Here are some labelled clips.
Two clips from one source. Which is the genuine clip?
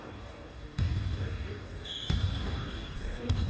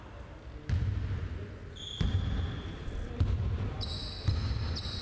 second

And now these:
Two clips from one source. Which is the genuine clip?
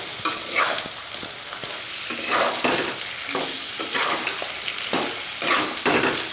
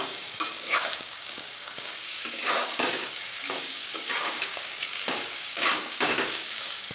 first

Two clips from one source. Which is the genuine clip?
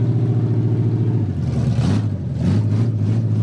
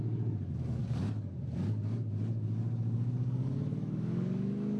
first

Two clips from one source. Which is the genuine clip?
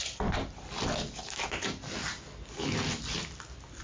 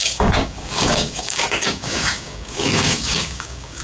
first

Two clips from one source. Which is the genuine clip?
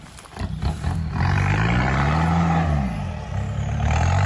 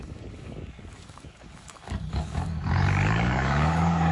first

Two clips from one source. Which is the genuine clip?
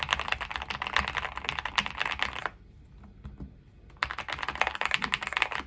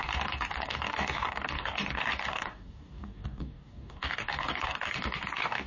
first